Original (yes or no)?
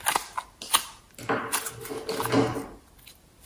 yes